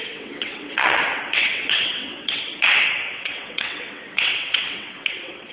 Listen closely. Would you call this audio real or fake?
fake